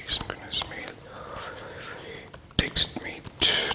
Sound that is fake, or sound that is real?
real